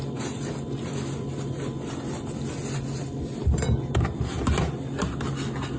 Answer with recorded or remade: recorded